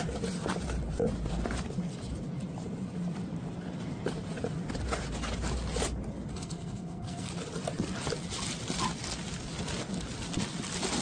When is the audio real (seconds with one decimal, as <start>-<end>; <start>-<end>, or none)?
0.0-6.3; 7.3-11.0